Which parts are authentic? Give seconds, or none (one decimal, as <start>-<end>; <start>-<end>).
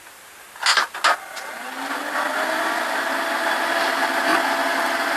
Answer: 0.0-5.2